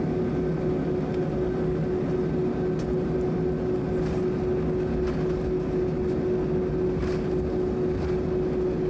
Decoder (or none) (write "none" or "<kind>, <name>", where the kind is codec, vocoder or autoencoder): none